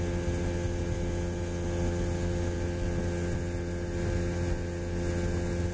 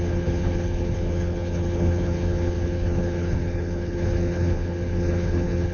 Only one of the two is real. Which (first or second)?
first